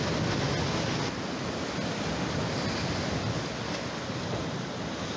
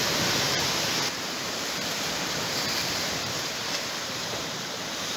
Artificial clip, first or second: second